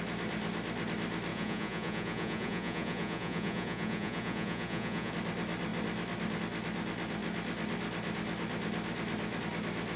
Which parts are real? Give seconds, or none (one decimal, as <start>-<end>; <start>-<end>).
0.0-1.3; 5.1-10.0